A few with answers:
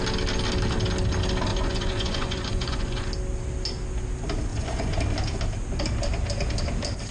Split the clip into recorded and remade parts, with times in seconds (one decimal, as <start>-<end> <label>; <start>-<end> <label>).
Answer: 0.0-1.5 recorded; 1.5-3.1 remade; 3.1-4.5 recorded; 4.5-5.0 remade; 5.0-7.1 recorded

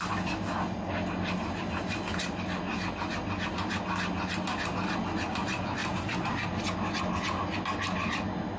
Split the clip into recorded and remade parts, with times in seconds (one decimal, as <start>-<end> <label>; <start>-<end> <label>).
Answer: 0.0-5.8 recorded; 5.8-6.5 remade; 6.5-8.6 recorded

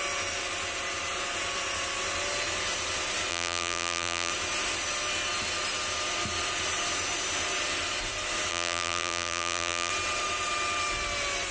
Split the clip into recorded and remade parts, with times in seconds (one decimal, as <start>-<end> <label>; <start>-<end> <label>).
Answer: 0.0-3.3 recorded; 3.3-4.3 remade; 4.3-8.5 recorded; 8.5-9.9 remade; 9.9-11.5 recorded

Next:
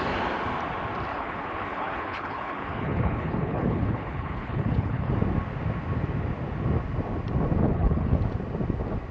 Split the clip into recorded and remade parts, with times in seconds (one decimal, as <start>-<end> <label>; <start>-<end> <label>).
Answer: 0.0-1.1 recorded; 1.1-5.1 remade; 5.1-7.6 recorded; 7.6-8.2 remade; 8.2-9.1 recorded